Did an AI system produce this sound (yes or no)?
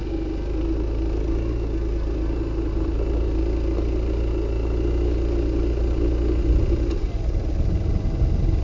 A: no